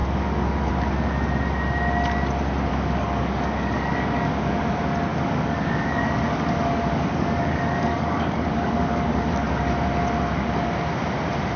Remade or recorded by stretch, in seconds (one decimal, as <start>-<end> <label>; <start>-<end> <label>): 0.0-0.7 remade; 0.7-2.7 recorded; 2.7-4.6 remade; 4.6-5.1 recorded; 5.1-9.6 remade; 9.6-11.6 recorded